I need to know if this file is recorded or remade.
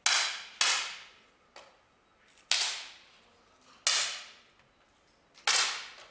recorded